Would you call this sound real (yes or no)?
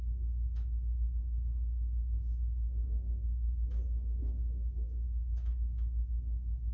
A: no